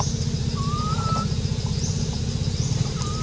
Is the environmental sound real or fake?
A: real